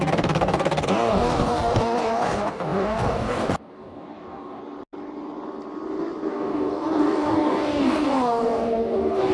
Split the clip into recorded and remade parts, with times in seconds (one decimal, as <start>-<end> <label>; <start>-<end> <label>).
0.0-4.6 remade; 4.6-6.3 recorded; 6.3-9.3 remade